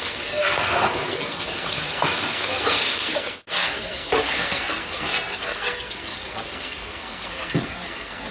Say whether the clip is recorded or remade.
remade